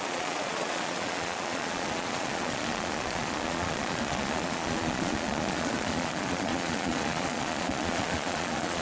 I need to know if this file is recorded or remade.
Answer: remade